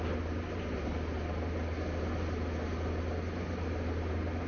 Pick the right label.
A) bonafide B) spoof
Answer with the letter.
A